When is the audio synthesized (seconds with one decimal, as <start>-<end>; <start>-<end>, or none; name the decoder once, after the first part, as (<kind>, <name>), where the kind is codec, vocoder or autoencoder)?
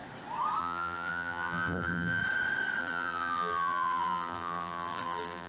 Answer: 0.6-2.2 (vocoder, BigVGAN v2); 2.8-5.5